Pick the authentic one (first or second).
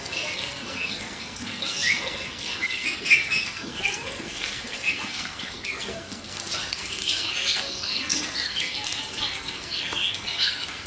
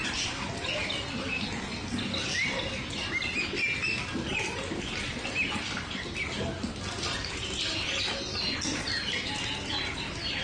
second